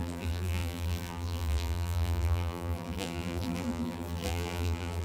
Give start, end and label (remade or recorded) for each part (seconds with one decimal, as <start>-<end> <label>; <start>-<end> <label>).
0.0-5.0 remade